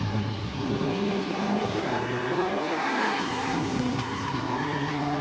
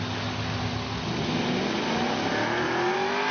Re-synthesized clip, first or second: first